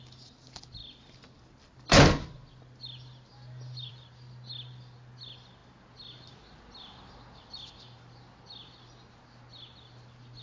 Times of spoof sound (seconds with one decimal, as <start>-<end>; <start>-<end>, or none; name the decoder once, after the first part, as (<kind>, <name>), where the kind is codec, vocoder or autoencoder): none